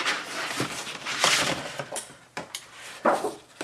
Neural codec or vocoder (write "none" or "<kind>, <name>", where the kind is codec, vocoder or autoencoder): vocoder, BigVGAN v2